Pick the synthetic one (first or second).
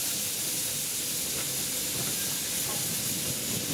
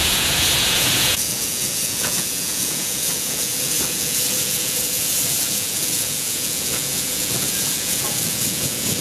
second